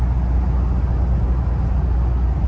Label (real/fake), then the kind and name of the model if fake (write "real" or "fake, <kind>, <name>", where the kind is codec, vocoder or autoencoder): real